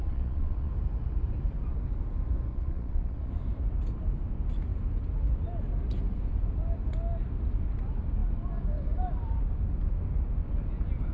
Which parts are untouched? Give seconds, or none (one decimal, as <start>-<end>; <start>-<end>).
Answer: 0.7-2.5; 3.3-11.1